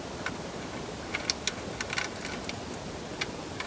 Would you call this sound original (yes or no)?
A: yes